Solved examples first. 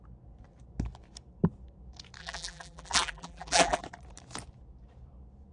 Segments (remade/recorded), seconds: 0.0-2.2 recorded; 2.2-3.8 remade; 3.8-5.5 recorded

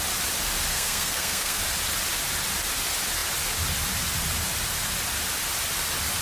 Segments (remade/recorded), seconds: 0.0-0.7 recorded; 0.7-1.6 remade; 1.6-6.2 recorded